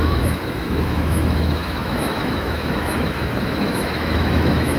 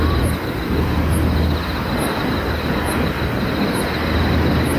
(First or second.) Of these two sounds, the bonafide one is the second